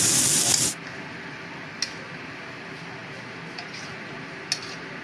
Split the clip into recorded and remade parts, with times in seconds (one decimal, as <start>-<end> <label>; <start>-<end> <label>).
0.0-5.0 recorded